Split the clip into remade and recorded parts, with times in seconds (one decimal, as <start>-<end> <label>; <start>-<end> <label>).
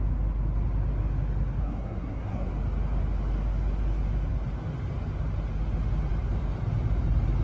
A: 0.0-1.6 recorded; 1.6-2.5 remade; 2.5-7.4 recorded